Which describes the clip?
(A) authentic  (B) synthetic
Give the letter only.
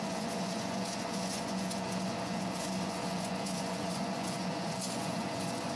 B